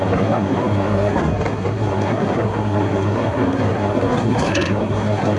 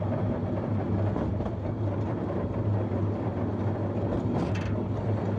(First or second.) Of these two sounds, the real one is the second